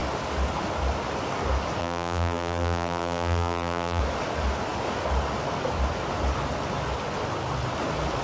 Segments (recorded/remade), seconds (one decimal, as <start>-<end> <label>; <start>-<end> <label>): 0.0-1.8 recorded; 1.8-4.0 remade; 4.0-8.2 recorded